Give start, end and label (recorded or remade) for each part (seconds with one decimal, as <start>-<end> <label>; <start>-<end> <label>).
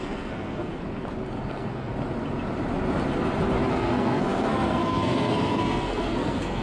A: 0.0-0.7 remade; 0.7-1.5 recorded; 1.5-1.9 remade; 1.9-3.7 recorded; 3.7-6.6 remade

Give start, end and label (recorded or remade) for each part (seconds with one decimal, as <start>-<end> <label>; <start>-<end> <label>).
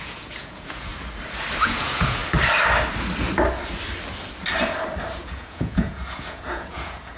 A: 0.0-0.9 remade; 0.9-1.6 recorded; 1.6-2.2 remade; 2.2-5.2 recorded; 5.2-7.2 remade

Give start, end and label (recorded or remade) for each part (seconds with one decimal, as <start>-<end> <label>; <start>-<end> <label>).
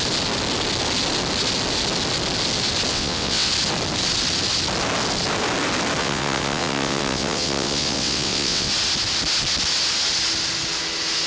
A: 0.0-2.9 recorded; 2.9-3.5 remade; 3.5-6.0 recorded; 6.0-8.7 remade; 8.7-11.3 recorded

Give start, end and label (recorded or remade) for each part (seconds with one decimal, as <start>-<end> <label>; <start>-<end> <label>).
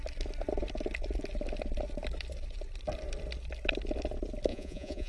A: 0.0-4.5 recorded; 4.5-5.1 remade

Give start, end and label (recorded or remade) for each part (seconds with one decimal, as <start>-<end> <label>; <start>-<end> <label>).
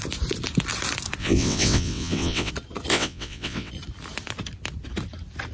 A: 0.0-1.2 recorded; 1.2-2.5 remade; 2.5-2.9 recorded; 2.9-3.7 remade; 3.7-5.5 recorded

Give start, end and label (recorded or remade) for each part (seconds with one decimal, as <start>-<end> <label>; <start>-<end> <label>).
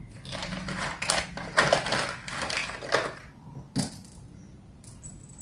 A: 0.0-0.4 recorded; 0.4-1.3 remade; 1.3-5.4 recorded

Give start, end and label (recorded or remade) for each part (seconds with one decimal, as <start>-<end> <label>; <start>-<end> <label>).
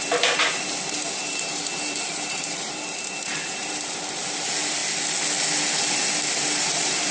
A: 0.0-4.8 remade; 4.8-6.5 recorded; 6.5-7.1 remade